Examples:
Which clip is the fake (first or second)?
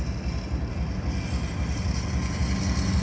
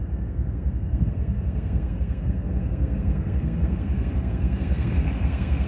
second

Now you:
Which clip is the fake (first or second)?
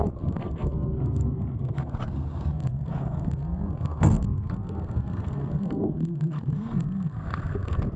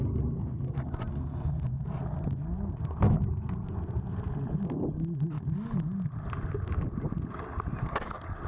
first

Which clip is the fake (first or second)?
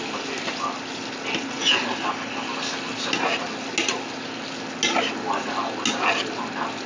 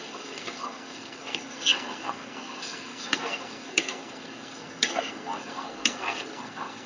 second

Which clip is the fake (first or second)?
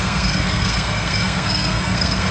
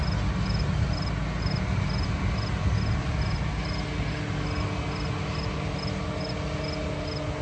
first